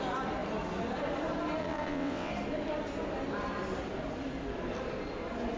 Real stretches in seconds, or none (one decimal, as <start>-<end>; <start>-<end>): 0.0-1.6; 2.3-5.6